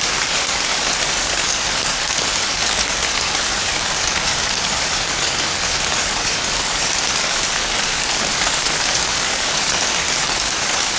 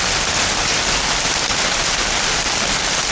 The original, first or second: second